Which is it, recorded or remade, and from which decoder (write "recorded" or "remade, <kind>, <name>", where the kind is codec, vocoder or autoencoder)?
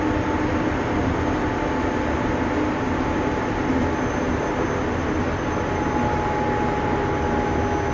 recorded